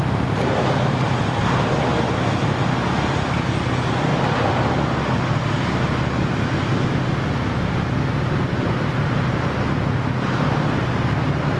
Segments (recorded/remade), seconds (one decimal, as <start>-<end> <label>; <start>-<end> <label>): 0.0-11.6 recorded